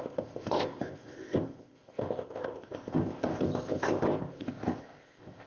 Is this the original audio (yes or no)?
no